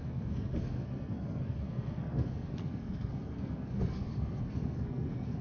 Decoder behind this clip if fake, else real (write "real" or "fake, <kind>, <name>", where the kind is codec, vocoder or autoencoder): fake, codec, SNAC